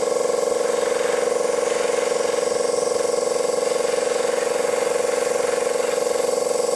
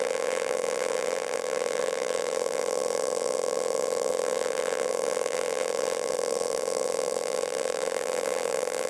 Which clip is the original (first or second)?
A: first